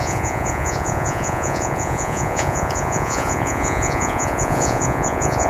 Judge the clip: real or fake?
fake